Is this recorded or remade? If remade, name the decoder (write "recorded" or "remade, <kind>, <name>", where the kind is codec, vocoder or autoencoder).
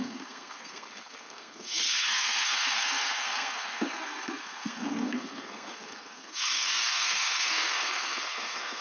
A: remade, codec, SNAC